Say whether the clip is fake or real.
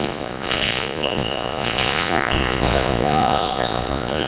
fake